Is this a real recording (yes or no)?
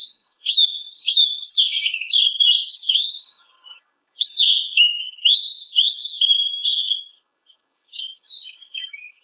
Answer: no